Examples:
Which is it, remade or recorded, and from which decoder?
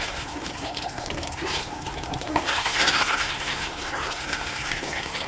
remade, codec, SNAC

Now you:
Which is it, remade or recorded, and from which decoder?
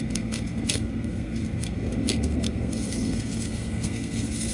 remade, codec, SNAC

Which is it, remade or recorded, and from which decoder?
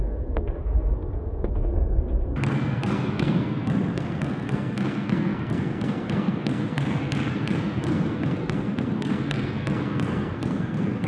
remade, codec, SNAC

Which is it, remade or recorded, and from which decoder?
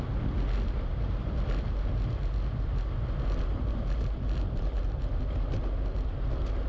recorded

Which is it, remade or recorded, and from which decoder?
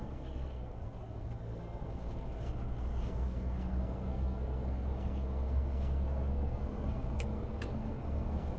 remade, codec, SNAC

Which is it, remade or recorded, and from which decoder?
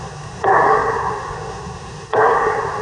remade, codec, SNAC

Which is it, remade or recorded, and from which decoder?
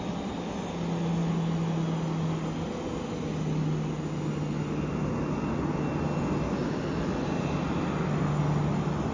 recorded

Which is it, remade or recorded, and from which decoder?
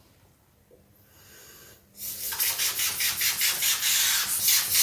recorded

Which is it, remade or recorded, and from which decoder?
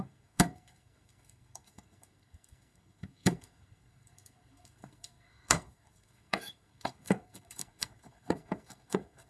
remade, codec, SNAC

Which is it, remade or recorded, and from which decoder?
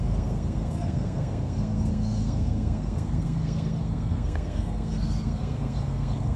remade, codec, SNAC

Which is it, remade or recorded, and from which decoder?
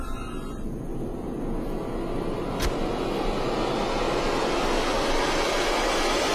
recorded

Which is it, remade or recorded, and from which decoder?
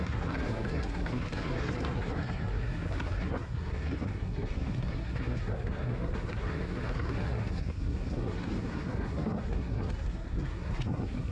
remade, codec, SNAC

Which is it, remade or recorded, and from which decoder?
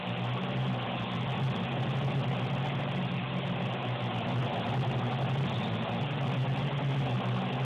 recorded